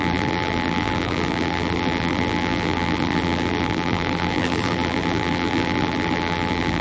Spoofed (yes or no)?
yes